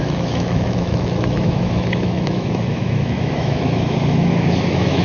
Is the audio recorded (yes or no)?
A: no